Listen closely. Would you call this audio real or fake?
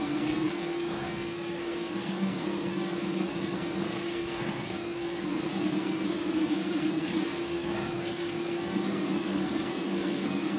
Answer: fake